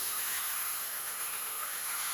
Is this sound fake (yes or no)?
yes